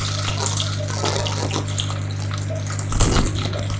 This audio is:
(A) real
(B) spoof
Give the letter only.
A